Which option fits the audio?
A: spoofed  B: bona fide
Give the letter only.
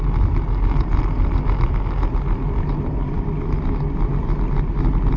B